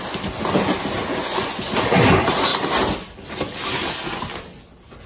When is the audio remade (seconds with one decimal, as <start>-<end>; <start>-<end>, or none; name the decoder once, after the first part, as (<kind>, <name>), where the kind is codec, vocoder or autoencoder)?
1.1-1.7 (vocoder, Vocos)